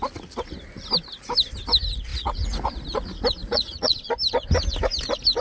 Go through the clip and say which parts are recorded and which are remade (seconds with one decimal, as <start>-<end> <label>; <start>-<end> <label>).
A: 0.0-2.1 recorded; 2.1-2.7 remade; 2.7-3.4 recorded; 3.4-4.1 remade; 4.1-5.4 recorded